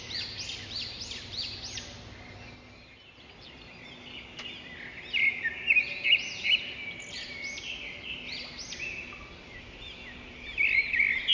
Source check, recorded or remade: recorded